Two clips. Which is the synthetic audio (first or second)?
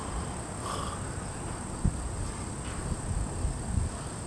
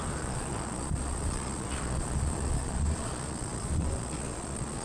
second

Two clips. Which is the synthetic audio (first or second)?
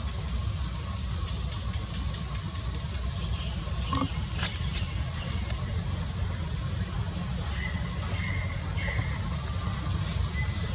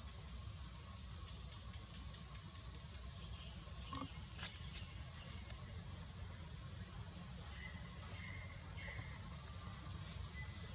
first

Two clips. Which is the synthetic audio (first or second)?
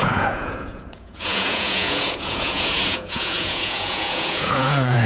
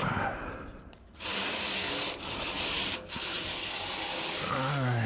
first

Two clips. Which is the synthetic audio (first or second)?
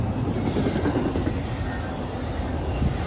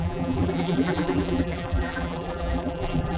second